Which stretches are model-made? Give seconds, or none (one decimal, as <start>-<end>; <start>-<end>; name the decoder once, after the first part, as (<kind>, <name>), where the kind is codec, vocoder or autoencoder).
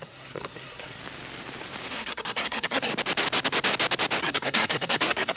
0.0-1.0 (codec, SNAC); 1.9-2.9; 4.2-5.4